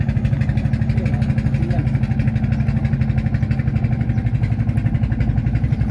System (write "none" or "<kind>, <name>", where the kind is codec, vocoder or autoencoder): none